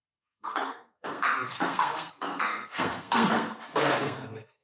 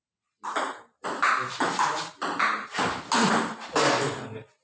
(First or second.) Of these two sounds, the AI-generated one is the first